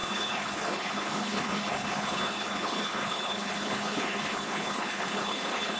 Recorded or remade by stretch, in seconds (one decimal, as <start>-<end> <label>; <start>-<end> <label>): 0.0-5.8 remade